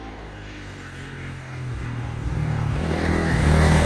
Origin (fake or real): fake